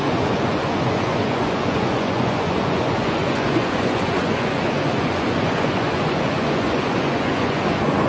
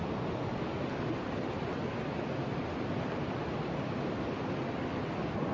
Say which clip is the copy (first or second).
first